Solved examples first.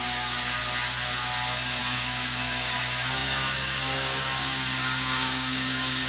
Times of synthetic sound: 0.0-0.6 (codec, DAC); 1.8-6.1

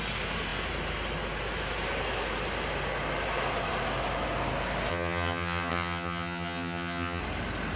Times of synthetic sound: 4.9-7.2 (vocoder, HiFi-GAN)